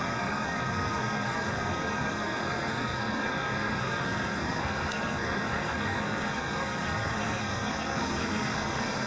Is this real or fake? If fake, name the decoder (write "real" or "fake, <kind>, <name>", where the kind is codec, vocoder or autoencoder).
fake, codec, SNAC